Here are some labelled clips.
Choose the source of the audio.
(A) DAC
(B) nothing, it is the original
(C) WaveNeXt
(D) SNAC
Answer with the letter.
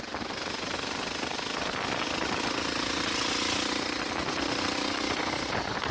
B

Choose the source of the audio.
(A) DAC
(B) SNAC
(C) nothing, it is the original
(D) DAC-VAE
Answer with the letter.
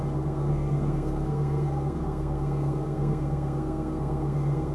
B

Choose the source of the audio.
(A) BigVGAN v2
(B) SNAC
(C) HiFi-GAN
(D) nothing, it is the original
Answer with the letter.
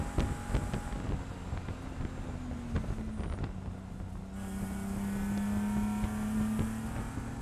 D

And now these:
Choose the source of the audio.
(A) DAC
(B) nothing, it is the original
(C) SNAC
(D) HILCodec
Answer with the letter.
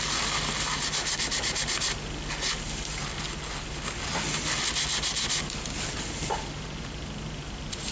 B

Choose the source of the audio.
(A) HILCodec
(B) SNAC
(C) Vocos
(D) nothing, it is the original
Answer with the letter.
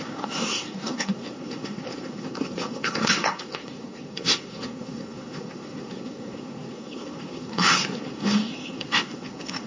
B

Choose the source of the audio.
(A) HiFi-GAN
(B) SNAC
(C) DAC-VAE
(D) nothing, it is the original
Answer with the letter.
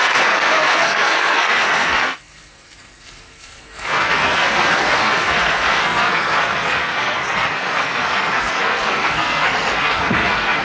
B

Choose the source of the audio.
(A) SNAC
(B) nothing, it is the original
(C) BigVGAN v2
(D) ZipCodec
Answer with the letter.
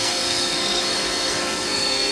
A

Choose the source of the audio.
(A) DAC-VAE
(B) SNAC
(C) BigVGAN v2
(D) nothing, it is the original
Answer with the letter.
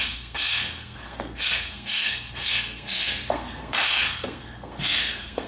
B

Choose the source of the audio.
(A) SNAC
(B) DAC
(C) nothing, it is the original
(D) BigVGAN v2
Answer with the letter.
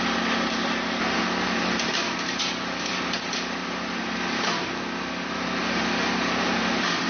C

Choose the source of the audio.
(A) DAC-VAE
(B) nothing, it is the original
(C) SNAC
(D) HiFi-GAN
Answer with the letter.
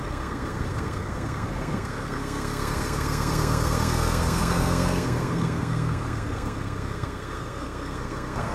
C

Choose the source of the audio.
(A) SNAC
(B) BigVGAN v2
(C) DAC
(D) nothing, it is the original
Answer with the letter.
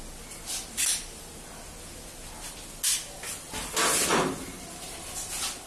D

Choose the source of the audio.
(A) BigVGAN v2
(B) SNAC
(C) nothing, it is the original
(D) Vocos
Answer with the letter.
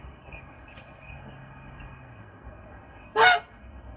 B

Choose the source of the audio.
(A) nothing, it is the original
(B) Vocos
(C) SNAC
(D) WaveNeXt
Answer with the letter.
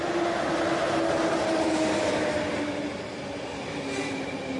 A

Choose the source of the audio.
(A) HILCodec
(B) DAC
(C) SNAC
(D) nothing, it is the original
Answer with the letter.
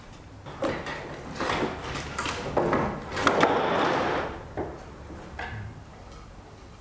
D